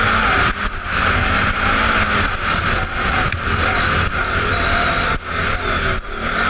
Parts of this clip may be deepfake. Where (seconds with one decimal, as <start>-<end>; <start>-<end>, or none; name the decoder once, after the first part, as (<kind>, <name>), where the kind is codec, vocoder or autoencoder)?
none